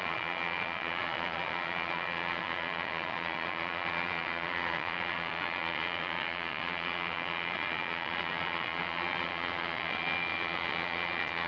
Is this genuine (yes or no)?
no